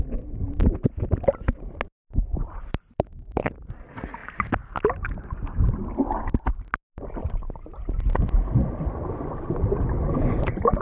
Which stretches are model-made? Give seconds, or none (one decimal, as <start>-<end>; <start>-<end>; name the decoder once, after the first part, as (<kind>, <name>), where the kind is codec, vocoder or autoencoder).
none